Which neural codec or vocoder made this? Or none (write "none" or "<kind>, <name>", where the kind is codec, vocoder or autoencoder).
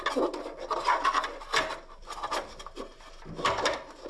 none